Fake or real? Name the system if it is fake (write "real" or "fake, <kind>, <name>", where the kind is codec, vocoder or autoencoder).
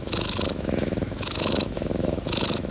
fake, autoencoder, DAC-VAE